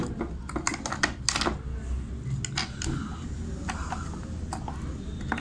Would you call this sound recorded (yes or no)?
yes